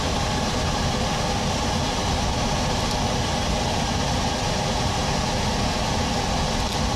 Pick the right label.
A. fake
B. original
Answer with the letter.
B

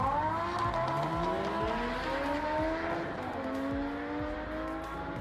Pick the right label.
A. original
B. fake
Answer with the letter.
A